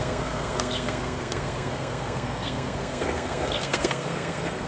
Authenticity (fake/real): fake